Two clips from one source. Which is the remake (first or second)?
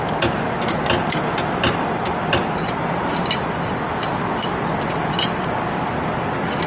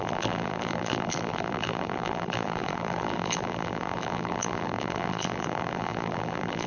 second